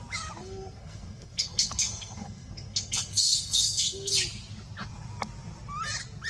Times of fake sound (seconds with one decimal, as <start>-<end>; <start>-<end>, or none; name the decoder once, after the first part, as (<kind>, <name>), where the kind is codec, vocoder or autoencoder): 0.4-4.1 (codec, SNAC)